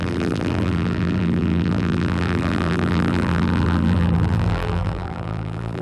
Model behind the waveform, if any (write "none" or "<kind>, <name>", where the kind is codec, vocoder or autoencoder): vocoder, BigVGAN v2